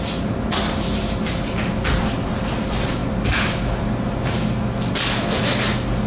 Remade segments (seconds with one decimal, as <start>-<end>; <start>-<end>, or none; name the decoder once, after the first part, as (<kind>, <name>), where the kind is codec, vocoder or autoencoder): none